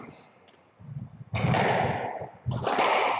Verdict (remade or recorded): recorded